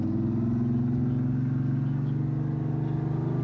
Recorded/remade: recorded